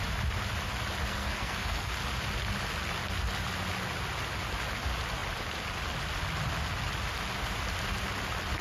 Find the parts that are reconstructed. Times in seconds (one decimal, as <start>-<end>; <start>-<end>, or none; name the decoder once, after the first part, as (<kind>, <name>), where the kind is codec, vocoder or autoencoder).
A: 1.1-1.9 (codec, SNAC)